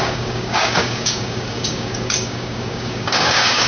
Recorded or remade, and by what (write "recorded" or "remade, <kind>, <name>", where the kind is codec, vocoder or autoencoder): remade, codec, DAC